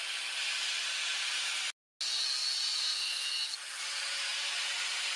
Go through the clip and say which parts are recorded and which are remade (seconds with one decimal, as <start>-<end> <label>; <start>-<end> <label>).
0.0-5.2 recorded